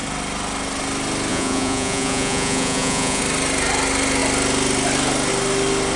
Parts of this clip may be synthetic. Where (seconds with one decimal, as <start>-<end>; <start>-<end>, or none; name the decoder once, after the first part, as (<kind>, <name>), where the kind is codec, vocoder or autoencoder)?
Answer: 1.3-3.2 (vocoder, Vocos)